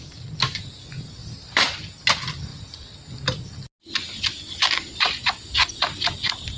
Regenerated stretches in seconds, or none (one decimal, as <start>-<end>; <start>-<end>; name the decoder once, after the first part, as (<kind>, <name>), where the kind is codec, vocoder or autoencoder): 1.2-1.8 (vocoder, BigVGAN v2)